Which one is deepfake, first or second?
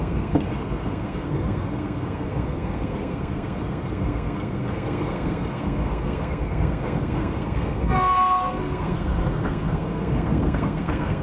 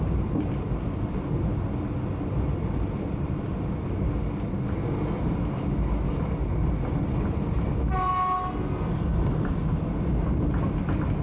first